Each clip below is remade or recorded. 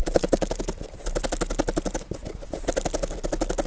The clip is recorded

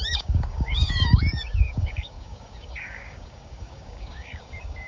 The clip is remade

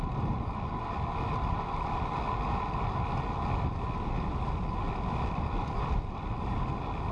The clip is recorded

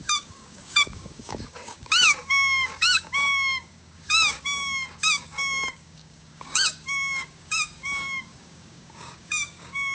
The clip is remade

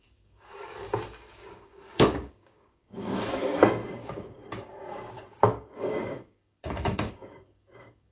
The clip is remade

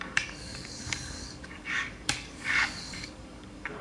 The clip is remade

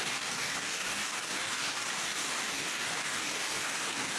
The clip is remade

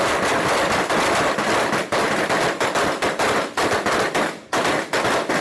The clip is recorded